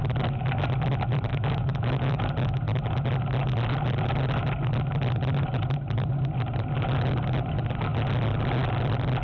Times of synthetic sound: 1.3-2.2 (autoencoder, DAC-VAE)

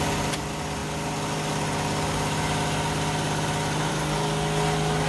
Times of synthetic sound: none

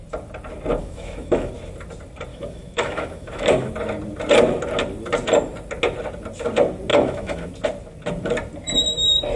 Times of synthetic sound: 0.8-1.5 (autoencoder, DAC-VAE); 2.3-3.7; 6.9-7.5

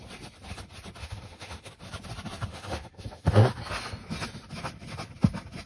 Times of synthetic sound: 1.0-1.7 (autoencoder, DAC-VAE); 2.5-3.6